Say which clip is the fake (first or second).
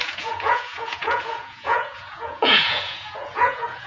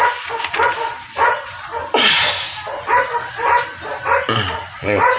first